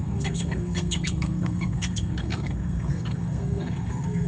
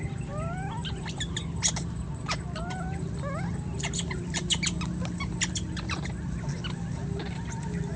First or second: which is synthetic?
first